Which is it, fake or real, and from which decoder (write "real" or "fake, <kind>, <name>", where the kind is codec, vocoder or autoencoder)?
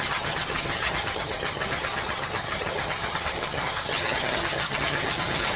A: fake, vocoder, HiFi-GAN